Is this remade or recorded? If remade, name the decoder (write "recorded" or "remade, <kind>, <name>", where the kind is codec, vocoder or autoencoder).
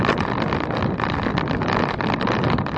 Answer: recorded